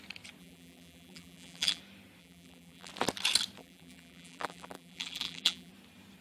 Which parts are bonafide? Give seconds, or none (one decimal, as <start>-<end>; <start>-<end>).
0.0-0.4; 1.8-2.2; 2.9-3.6; 5.7-6.2